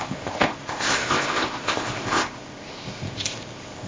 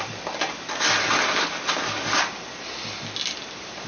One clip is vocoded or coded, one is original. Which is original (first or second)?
second